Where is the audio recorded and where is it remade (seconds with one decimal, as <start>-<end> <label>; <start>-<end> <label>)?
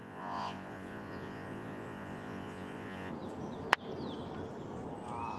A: 0.0-3.1 remade; 3.1-5.4 recorded